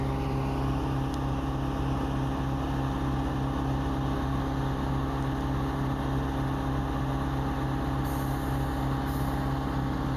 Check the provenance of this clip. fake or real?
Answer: real